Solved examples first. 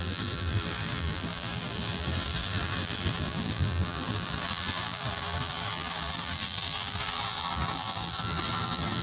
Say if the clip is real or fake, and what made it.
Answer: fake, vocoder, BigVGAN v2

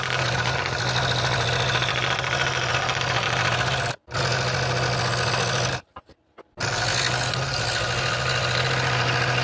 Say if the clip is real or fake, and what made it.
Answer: real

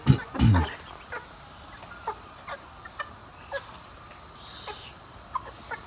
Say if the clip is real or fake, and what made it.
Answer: real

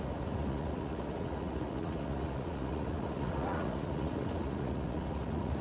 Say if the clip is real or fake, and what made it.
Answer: fake, vocoder, Vocos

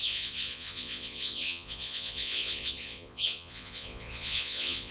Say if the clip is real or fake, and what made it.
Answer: fake, vocoder, Vocos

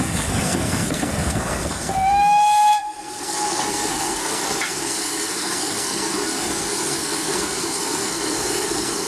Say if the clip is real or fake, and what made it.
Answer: fake, codec, SNAC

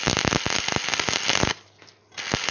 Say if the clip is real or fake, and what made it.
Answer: real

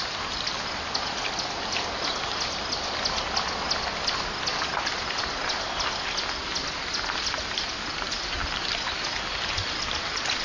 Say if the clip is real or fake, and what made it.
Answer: real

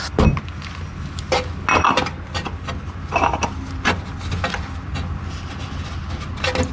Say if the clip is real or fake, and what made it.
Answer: real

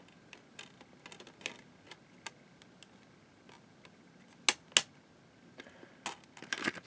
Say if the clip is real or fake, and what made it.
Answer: real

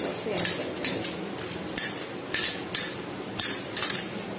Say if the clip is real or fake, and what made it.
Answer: real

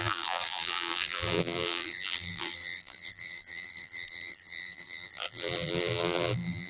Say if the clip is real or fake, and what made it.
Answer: fake, vocoder, BigVGAN v2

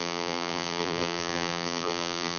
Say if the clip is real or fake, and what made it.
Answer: fake, vocoder, BigVGAN v2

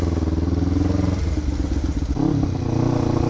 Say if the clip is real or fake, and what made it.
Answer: real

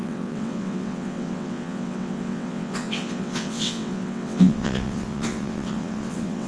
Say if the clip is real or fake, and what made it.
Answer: fake, vocoder, WaveNeXt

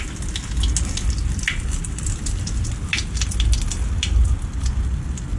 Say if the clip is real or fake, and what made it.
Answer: real